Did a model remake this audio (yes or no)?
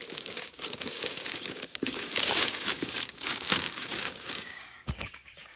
yes